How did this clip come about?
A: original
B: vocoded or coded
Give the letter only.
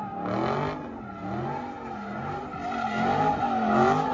A